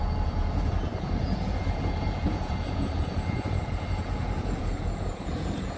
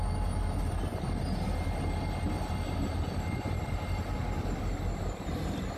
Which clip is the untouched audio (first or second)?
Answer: second